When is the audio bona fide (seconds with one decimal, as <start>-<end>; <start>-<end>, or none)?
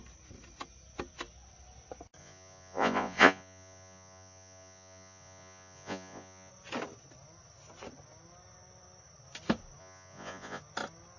0.0-2.2; 6.5-9.8; 10.6-11.2